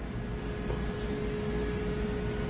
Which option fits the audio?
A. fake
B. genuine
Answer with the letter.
B